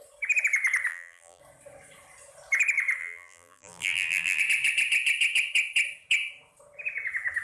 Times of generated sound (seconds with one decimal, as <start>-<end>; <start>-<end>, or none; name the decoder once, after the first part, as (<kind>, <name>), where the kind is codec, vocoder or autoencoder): 0.9-1.4 (vocoder, BigVGAN v2); 3.0-4.4